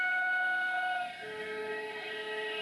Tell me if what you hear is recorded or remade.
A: remade